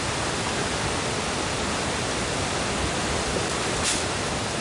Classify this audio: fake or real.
fake